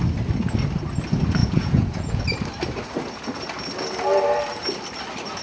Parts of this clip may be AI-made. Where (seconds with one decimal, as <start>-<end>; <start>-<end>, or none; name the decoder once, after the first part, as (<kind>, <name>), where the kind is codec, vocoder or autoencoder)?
1.4-2.2 (vocoder, Vocos)